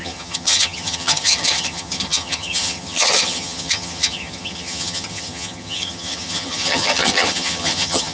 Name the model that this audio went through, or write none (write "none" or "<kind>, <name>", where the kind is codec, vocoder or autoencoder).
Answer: vocoder, HiFi-GAN